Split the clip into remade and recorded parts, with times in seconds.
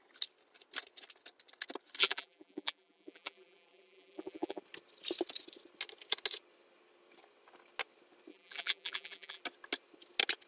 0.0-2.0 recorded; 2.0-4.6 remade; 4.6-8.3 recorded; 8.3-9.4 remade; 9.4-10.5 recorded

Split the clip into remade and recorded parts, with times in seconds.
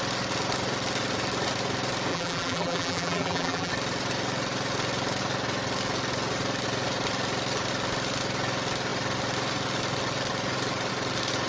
0.0-2.1 recorded; 2.1-3.7 remade; 3.7-11.5 recorded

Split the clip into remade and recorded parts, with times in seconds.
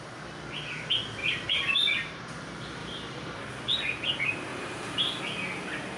0.0-1.2 recorded; 1.2-2.2 remade; 2.2-2.8 recorded; 2.8-3.4 remade; 3.4-4.5 recorded; 4.5-5.2 remade; 5.2-6.0 recorded